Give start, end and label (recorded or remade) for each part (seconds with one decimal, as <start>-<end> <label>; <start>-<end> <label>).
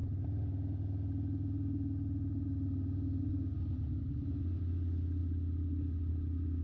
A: 0.0-6.6 recorded